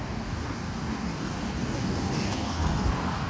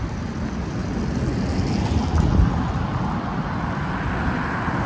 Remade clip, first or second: first